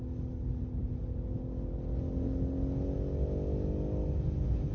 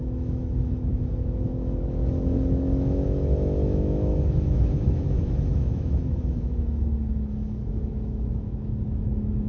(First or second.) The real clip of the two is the first